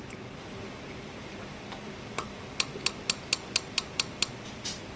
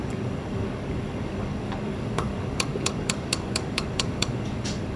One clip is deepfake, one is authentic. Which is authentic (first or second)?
first